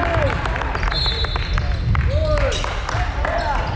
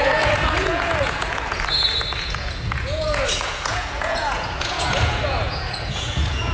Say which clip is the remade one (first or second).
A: second